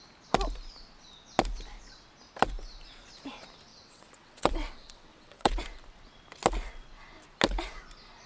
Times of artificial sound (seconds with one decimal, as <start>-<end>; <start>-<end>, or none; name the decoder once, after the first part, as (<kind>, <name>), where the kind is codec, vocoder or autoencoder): 3.7-5.6 (vocoder, WaveNeXt)